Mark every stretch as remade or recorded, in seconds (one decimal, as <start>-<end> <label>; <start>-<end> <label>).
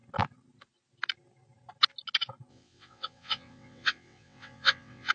0.0-2.5 recorded; 2.5-5.1 remade